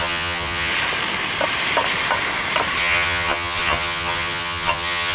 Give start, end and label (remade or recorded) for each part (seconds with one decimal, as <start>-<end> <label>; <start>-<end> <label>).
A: 0.0-0.7 remade; 0.7-2.8 recorded; 2.8-5.1 remade